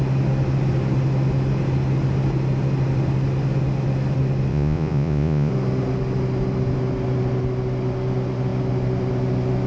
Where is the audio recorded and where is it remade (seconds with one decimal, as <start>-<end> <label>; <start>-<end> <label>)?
0.0-4.5 recorded; 4.5-5.5 remade; 5.5-9.7 recorded